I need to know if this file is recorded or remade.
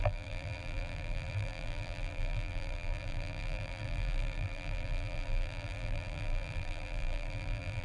remade